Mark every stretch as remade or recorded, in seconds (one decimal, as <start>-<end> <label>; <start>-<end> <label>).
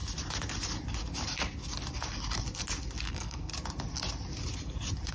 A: 0.0-3.1 recorded; 3.1-3.5 remade; 3.5-5.1 recorded